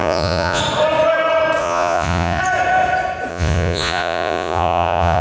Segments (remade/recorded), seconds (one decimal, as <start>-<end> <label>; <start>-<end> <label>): 0.0-0.6 remade; 0.6-1.6 recorded; 1.6-2.4 remade; 2.4-3.3 recorded; 3.3-5.2 remade